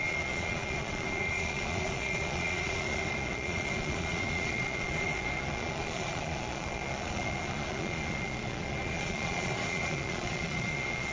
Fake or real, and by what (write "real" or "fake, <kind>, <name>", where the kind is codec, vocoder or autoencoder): fake, vocoder, Vocos